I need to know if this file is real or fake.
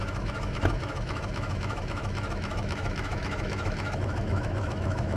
fake